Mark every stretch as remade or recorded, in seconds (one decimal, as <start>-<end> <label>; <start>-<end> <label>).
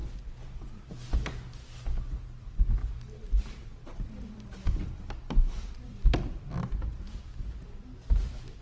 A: 0.0-0.9 remade; 0.9-2.8 recorded; 2.8-7.0 remade; 7.0-8.6 recorded